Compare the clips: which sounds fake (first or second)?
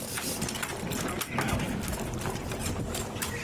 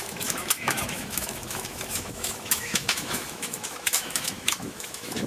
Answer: second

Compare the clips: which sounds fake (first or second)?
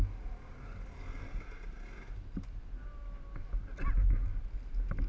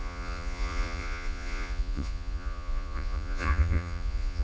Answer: second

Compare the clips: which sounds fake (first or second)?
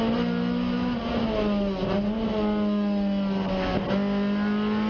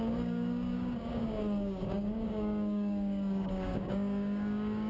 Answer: second